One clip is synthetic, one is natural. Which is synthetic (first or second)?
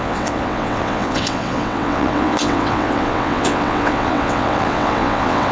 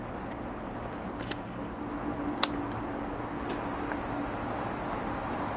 first